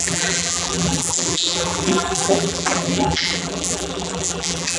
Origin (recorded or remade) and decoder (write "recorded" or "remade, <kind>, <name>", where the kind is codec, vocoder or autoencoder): remade, vocoder, BigVGAN v2